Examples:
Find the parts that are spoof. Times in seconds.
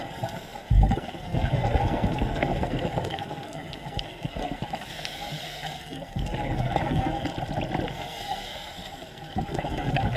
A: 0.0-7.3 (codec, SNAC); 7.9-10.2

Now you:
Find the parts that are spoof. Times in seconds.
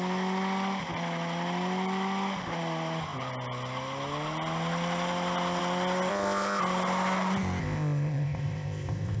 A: 6.1-6.6 (codec, ZipCodec); 7.6-9.2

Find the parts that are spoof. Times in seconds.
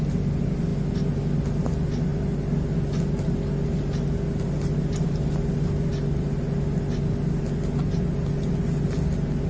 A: none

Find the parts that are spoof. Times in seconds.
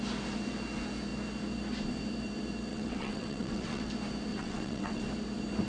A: 2.7-3.9 (vocoder, WaveNeXt); 4.3-5.0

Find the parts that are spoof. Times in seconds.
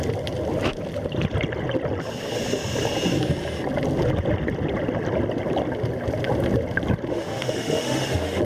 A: 7.1-8.4 (autoencoder, DAC-VAE)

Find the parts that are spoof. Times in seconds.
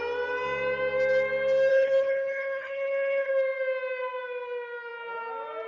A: 1.7-3.3 (codec, HILCodec)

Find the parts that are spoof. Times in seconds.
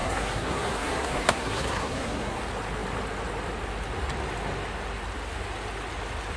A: 0.0-2.4 (codec, SNAC)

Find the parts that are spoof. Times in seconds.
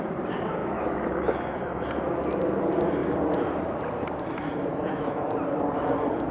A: 0.6-1.9 (autoencoder, DAC-VAE); 4.7-5.3